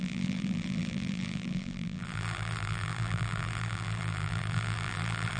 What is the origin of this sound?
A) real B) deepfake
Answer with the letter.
B